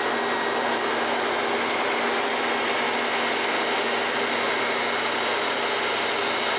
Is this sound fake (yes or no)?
no